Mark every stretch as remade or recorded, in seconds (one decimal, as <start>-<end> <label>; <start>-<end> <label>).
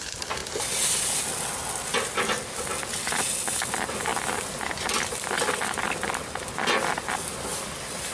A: 0.0-8.1 recorded